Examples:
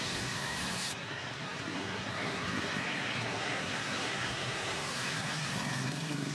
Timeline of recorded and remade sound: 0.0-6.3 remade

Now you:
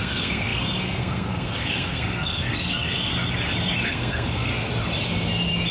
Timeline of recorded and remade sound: 0.0-3.1 remade; 3.1-3.8 recorded; 3.8-4.5 remade; 4.5-5.7 recorded

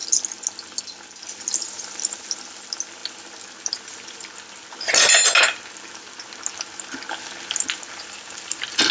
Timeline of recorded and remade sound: 0.0-8.9 recorded

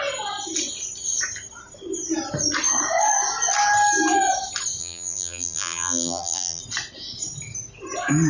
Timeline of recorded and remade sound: 0.0-4.8 recorded; 4.8-6.6 remade; 6.6-8.3 recorded

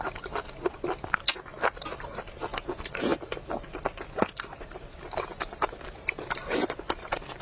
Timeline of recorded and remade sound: 0.0-7.4 recorded

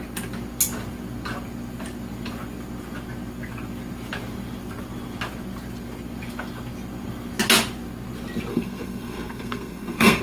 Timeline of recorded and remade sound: 0.0-8.5 recorded; 8.5-10.2 remade

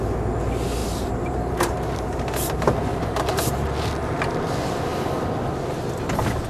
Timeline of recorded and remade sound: 0.0-0.8 recorded; 0.8-2.2 remade; 2.2-2.9 recorded; 2.9-3.6 remade; 3.6-6.5 recorded

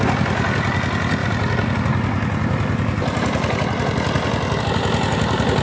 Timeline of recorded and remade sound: 0.0-5.6 recorded